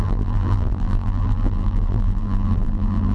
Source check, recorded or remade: remade